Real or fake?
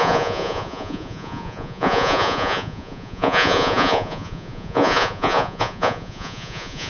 fake